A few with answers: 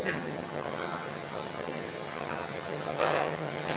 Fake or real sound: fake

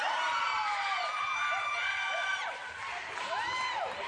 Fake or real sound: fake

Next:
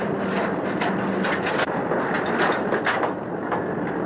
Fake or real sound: real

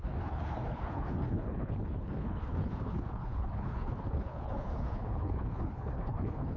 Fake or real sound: fake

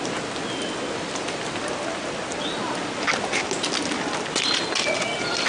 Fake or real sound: real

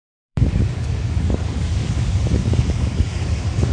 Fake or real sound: fake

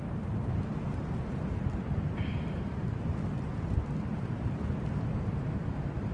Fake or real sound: real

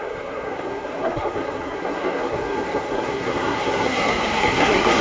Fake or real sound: fake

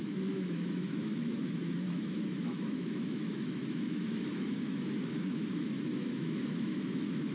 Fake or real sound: fake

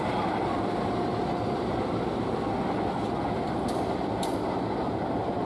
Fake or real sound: real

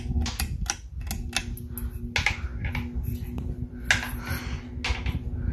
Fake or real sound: real